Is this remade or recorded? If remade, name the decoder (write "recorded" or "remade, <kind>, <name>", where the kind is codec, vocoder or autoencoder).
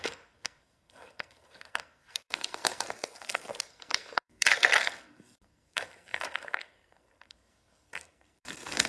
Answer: remade, codec, SNAC